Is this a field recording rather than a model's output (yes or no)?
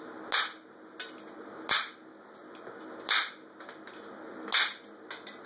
yes